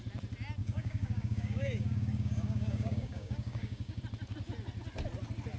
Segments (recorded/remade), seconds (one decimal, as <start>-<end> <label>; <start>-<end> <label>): 0.0-0.6 recorded; 0.6-4.0 remade; 4.0-5.6 recorded